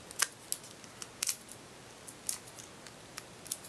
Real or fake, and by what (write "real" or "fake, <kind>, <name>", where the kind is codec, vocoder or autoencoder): real